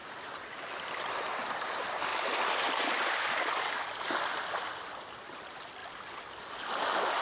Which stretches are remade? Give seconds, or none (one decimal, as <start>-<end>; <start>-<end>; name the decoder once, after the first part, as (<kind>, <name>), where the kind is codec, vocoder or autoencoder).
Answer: none